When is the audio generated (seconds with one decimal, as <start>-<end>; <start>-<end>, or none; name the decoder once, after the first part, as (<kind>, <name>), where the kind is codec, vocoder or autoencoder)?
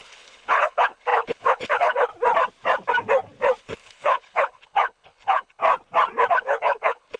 0.0-2.1 (codec, HILCodec); 3.6-5.6; 6.3-7.2